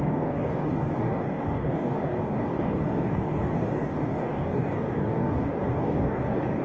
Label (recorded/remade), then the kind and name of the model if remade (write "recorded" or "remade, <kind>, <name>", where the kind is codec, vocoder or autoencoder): remade, codec, DAC